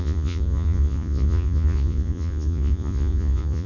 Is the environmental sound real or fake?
fake